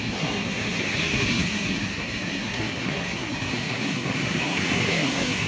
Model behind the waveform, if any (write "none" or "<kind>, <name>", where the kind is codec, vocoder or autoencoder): codec, SNAC